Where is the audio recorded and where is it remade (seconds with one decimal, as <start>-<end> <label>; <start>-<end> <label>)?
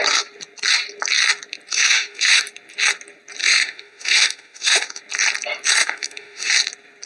0.0-1.7 recorded; 1.7-2.4 remade; 2.4-3.4 recorded; 3.4-5.0 remade; 5.0-5.8 recorded; 5.8-6.5 remade; 6.5-7.1 recorded